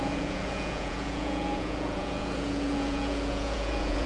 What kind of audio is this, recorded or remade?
remade